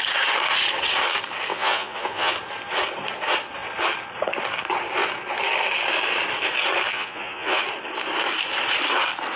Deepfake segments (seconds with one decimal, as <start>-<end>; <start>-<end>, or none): 1.5-2.3; 6.9-7.6

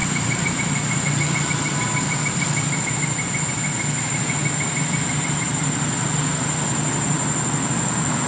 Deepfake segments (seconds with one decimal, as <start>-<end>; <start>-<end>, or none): none

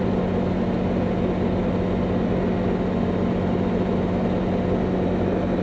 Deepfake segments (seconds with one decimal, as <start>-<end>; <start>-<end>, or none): none

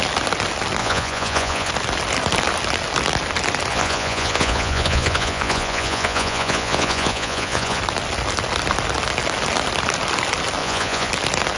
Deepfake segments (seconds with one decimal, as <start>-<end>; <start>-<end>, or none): 0.8-1.7; 3.7-7.8; 10.6-11.1

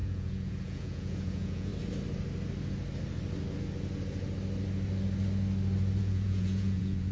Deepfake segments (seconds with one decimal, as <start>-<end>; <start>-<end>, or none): 0.0-1.7; 6.0-7.1

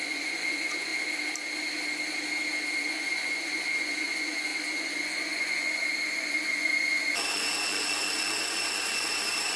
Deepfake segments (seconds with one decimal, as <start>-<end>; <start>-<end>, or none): 0.0-0.9; 2.8-9.6

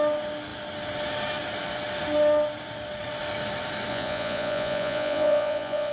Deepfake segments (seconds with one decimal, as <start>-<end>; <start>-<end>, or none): 3.9-5.9